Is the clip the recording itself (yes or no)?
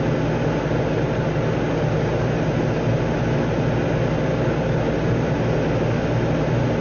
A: yes